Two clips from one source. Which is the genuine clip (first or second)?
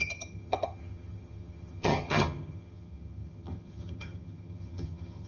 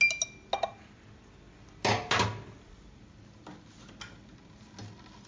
second